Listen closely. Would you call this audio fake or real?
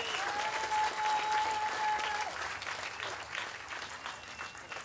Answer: real